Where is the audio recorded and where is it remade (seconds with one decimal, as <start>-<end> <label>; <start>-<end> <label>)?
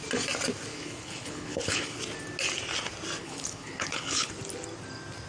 0.0-0.7 recorded; 0.7-2.0 remade; 2.0-3.2 recorded; 3.2-4.3 remade; 4.3-5.3 recorded